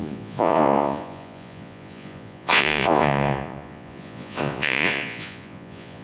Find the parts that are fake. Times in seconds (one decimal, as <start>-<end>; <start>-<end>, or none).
0.0-6.0